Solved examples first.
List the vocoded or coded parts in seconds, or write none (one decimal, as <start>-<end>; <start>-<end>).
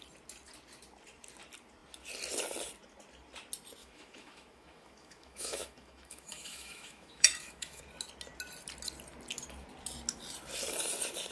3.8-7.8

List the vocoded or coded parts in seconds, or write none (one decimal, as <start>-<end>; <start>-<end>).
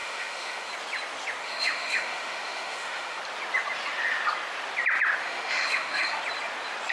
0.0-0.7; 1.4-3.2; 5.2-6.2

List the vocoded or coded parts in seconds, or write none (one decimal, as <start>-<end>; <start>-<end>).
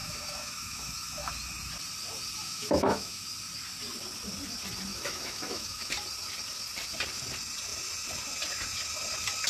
0.0-1.3; 2.4-3.2; 4.9-5.9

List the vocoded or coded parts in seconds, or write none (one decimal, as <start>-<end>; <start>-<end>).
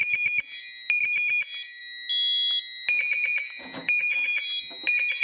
3.8-4.6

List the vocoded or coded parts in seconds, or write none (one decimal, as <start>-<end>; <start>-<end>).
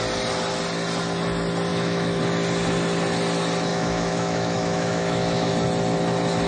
1.7-2.2; 3.7-5.5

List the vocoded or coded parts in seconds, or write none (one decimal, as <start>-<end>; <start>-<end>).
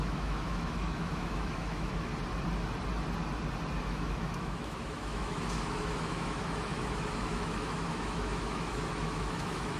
0.0-2.1; 3.8-9.8